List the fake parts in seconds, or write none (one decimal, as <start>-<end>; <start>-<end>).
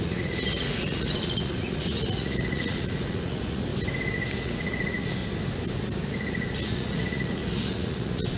0.0-3.7; 4.4-5.2; 6.1-8.4